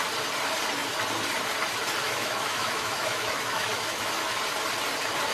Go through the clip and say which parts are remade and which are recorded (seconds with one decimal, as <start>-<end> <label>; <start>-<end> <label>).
0.0-2.0 recorded; 2.0-4.4 remade; 4.4-5.3 recorded